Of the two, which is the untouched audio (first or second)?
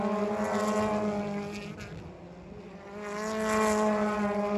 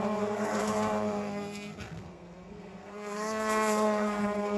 first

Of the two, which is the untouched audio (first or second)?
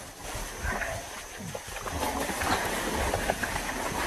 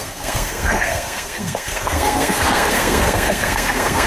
first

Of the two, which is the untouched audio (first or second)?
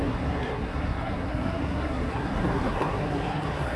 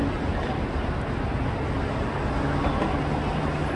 second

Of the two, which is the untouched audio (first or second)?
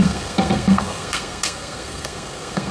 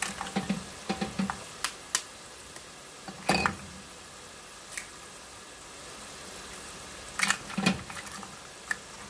second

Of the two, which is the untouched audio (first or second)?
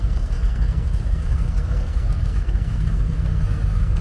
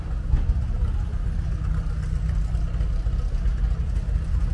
second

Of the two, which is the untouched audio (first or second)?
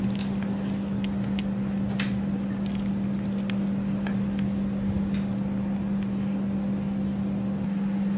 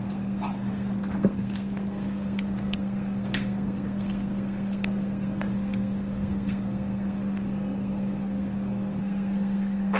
first